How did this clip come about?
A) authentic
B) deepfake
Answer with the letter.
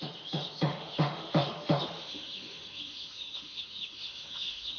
B